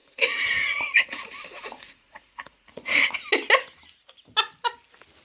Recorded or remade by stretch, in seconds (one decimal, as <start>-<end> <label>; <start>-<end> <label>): 0.0-3.1 remade; 3.1-5.2 recorded